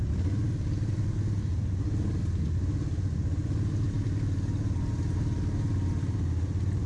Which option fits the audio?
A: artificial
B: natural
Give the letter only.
B